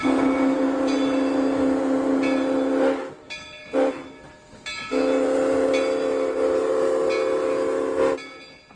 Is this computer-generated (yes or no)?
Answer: no